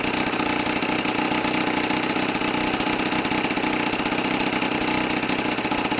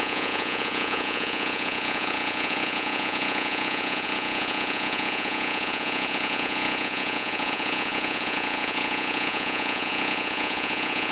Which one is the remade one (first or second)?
second